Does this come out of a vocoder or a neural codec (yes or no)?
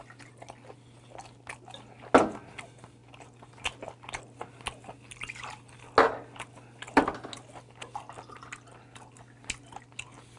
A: no